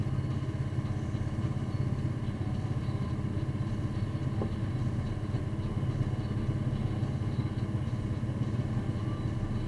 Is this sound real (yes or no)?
yes